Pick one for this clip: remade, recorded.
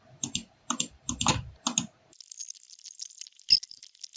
recorded